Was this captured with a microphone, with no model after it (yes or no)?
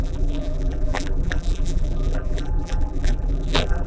no